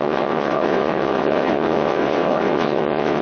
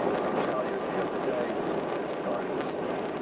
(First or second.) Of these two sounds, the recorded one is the second